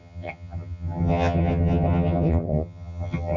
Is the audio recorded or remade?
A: remade